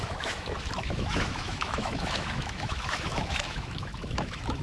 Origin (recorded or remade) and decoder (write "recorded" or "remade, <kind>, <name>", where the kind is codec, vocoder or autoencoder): remade, autoencoder, DAC-VAE